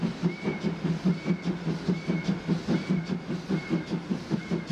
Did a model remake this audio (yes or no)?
no